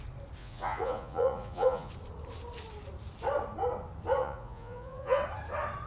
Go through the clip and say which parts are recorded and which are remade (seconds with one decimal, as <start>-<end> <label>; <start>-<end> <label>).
0.0-0.4 recorded; 0.4-1.9 remade; 1.9-4.2 recorded; 4.2-5.2 remade; 5.2-5.9 recorded